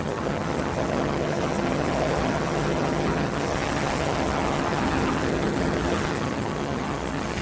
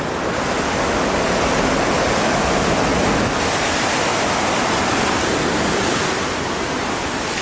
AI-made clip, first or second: first